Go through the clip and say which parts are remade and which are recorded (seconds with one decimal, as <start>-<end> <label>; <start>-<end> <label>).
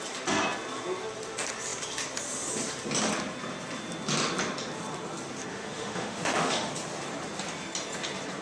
0.0-5.5 recorded; 5.5-6.7 remade; 6.7-8.4 recorded